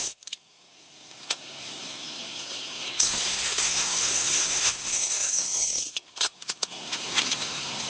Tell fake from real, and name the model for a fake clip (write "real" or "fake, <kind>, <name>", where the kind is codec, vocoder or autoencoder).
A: fake, codec, SNAC